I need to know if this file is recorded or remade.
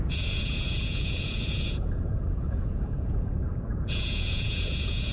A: remade